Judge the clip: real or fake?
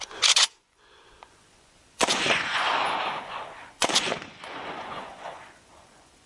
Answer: fake